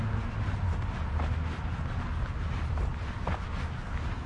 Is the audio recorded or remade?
recorded